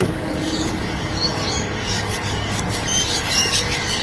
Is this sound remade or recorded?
remade